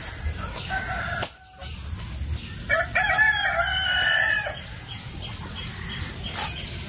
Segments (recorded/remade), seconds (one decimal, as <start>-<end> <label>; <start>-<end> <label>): 0.0-6.9 recorded